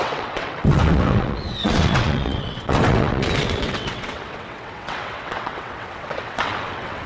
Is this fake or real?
fake